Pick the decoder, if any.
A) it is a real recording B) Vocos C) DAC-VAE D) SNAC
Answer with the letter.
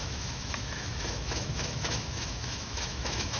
C